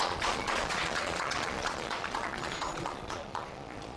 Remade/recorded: remade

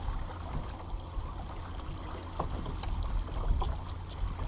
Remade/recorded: recorded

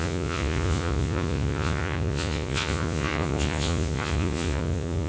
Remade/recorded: remade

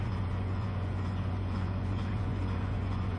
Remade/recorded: remade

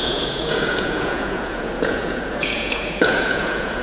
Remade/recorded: remade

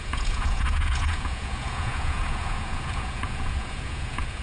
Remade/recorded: remade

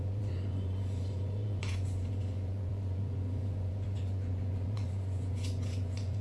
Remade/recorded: remade